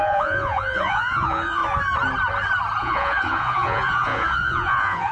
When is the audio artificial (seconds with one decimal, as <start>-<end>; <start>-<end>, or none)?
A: 0.0-1.6; 2.8-5.1